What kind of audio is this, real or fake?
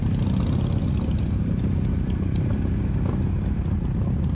real